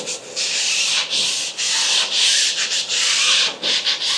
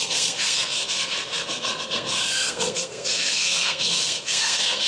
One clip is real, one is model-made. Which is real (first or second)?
first